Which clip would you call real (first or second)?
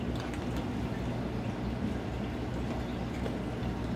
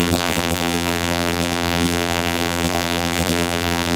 first